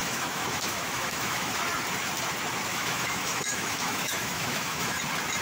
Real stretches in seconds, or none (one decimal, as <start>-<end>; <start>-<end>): 1.6-2.7; 5.0-5.4